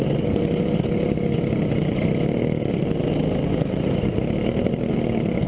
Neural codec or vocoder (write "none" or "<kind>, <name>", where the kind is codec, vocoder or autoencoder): none